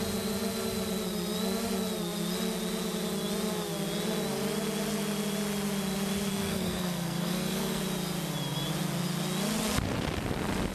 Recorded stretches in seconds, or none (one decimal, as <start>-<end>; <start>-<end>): 0.0-6.3; 7.8-10.7